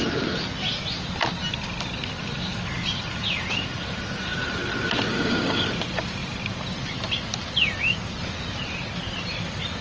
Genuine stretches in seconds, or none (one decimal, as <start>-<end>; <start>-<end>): 0.0-5.1; 5.7-9.8

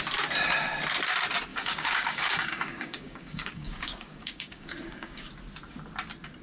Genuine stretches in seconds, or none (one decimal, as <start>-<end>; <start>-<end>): 0.0-1.5; 5.3-6.4

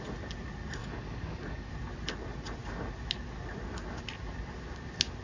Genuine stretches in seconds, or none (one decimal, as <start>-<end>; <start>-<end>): 0.0-0.8; 1.7-5.2

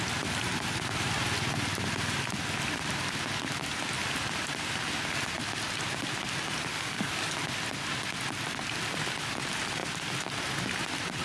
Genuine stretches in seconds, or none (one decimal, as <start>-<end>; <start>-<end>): 0.0-6.7; 7.3-11.2

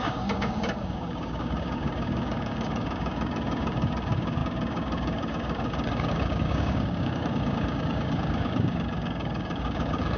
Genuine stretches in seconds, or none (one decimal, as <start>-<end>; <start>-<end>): none